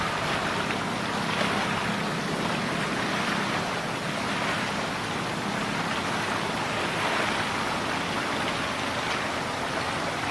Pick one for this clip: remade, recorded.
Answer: recorded